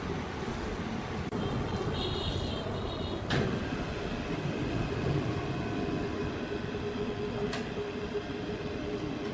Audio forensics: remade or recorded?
recorded